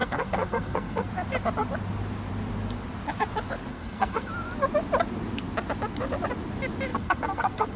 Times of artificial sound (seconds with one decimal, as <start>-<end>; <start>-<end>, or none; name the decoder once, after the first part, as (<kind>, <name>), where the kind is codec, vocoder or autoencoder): 0.0-1.1 (codec, SNAC); 3.7-4.3; 6.9-7.8